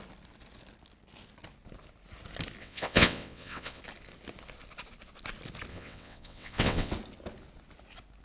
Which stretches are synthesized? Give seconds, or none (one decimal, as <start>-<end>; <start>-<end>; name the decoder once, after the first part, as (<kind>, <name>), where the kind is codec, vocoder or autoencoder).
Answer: 2.6-3.8 (vocoder, WaveNeXt); 5.7-6.9